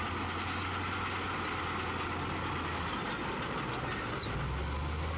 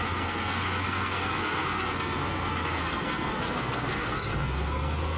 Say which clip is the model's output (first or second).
second